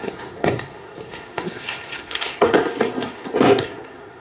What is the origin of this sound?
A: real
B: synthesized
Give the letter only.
B